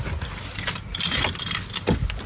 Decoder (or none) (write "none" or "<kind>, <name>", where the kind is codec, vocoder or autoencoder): none